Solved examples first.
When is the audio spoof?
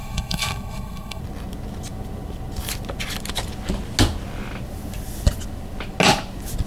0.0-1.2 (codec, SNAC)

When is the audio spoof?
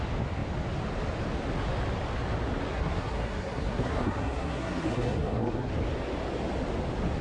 2.7-5.7 (codec, SNAC)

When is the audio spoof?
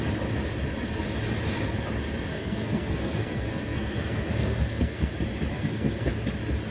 2.3-5.1 (codec, SNAC); 5.5-6.1